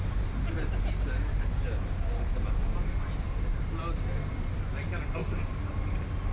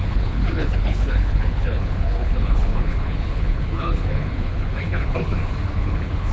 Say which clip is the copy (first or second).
second